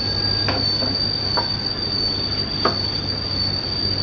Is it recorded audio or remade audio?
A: recorded